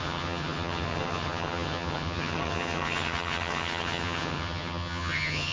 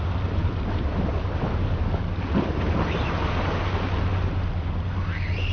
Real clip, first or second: second